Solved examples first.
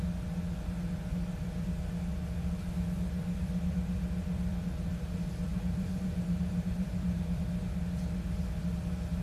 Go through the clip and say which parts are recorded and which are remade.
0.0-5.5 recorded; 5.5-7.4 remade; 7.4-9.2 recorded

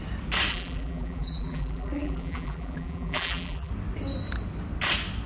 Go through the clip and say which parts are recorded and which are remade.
0.0-0.5 recorded; 0.5-3.7 remade; 3.7-5.3 recorded

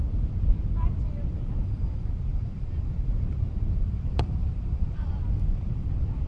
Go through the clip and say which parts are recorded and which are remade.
0.0-2.3 recorded; 2.3-5.1 remade; 5.1-6.3 recorded

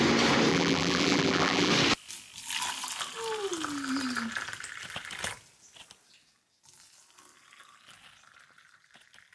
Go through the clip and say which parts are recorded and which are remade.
0.0-0.5 recorded; 0.5-1.7 remade; 1.7-9.3 recorded

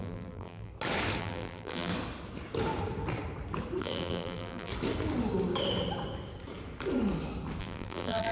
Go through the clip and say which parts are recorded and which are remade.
0.0-0.7 remade; 0.7-1.2 recorded; 1.2-1.9 remade; 1.9-3.8 recorded; 3.8-4.7 remade; 4.7-7.6 recorded; 7.6-8.3 remade

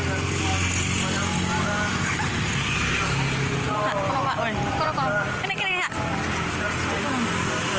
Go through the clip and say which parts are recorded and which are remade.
0.0-7.8 recorded

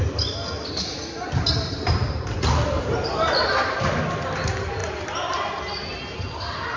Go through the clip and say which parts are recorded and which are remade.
0.0-0.4 recorded; 0.4-3.9 remade; 3.9-4.8 recorded; 4.8-5.6 remade; 5.6-6.8 recorded

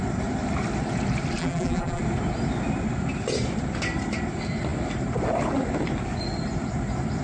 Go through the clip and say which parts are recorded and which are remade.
0.0-1.4 recorded; 1.4-2.0 remade; 2.0-7.2 recorded